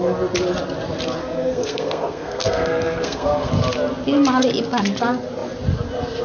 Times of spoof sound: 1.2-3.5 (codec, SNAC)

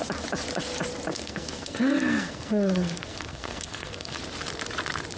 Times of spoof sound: 1.1-4.2 (codec, SNAC)

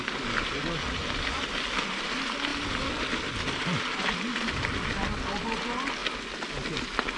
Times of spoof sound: none

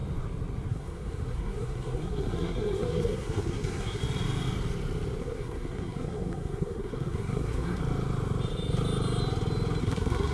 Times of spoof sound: 0.7-4.0 (codec, SNAC); 5.2-7.8; 9.8-10.3

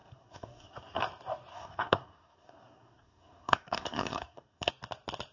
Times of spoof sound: 0.0-1.0 (codec, SNAC); 1.5-4.7

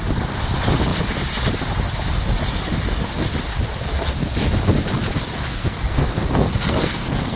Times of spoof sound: 5.5-7.4 (codec, SNAC)

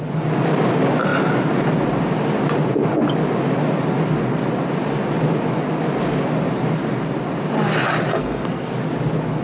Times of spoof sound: 8.1-8.7 (codec, SNAC)

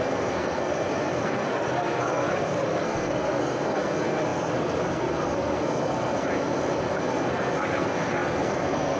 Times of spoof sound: 0.0-6.3 (codec, SNAC); 6.9-9.0